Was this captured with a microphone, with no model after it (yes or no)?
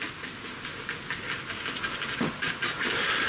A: yes